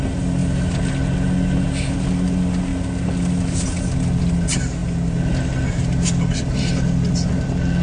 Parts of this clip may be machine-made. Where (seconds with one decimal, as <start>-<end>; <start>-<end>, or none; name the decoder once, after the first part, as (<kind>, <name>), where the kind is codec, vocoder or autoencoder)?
none